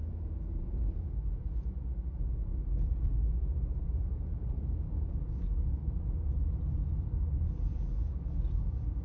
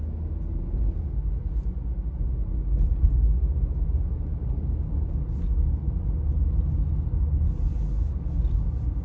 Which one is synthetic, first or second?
first